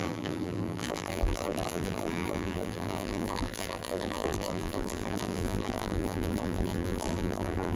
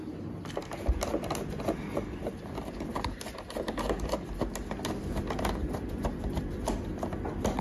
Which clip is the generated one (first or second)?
first